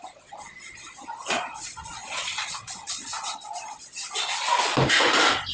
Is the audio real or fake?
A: real